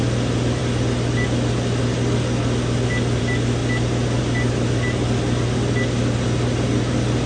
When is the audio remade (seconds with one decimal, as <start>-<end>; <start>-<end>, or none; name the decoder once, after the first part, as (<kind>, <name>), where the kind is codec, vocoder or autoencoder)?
none